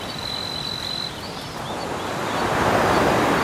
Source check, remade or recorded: recorded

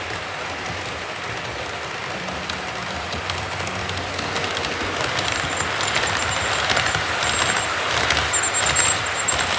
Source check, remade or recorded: recorded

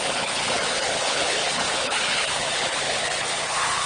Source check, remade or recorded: remade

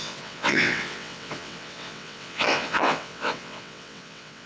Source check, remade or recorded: remade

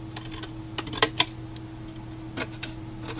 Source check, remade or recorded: recorded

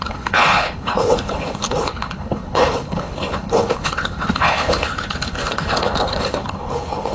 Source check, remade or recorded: remade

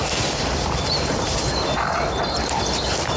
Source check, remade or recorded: recorded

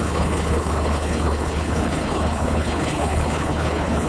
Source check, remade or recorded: remade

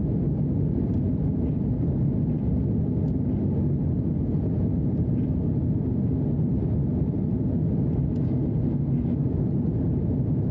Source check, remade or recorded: recorded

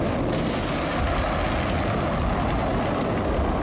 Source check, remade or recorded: recorded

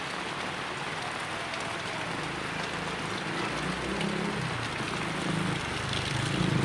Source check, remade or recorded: recorded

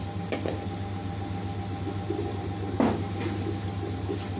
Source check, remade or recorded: recorded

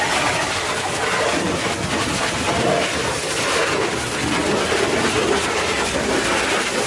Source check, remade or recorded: recorded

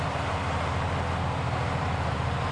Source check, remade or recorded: recorded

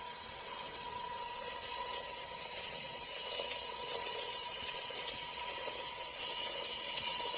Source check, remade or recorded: remade